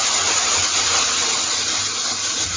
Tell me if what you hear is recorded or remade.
recorded